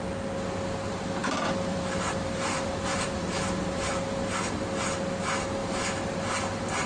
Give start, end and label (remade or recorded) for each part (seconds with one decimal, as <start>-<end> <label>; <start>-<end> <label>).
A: 0.0-1.2 recorded; 1.2-3.9 remade; 3.9-5.6 recorded; 5.6-6.9 remade